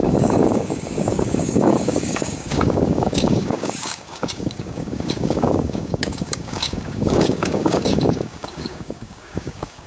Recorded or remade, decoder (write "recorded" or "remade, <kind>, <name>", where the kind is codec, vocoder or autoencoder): remade, codec, DAC